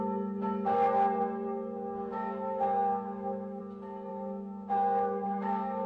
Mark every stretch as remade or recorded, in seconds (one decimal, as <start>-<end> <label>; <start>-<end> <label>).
0.0-2.1 recorded; 2.1-3.6 remade; 3.6-4.1 recorded; 4.1-5.9 remade